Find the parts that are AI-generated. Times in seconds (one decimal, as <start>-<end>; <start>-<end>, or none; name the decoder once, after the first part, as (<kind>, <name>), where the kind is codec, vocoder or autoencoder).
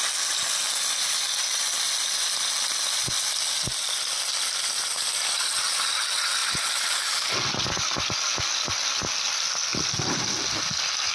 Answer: none